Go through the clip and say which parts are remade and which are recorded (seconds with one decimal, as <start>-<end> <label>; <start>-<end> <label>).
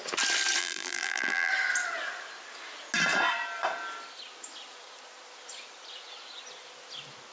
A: 0.0-0.6 recorded; 0.6-1.5 remade; 1.5-7.3 recorded